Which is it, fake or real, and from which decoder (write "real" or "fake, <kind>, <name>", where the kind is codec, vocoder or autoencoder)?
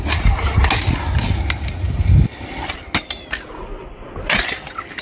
real